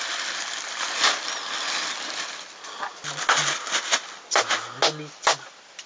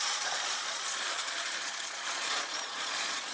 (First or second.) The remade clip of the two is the second